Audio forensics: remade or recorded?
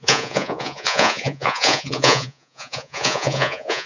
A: remade